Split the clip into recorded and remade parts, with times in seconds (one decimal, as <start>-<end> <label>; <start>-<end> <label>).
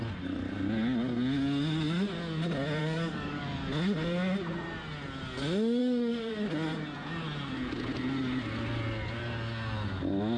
0.0-2.8 recorded; 2.8-3.4 remade; 3.4-5.8 recorded; 5.8-6.3 remade; 6.3-10.4 recorded